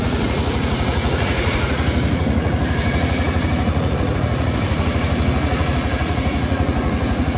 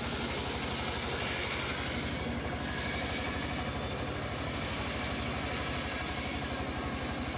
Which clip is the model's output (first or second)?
first